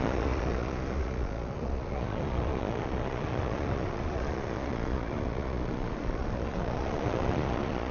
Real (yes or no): no